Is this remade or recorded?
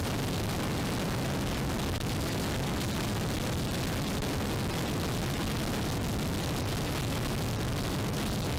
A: recorded